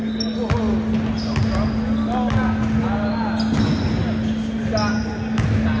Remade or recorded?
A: recorded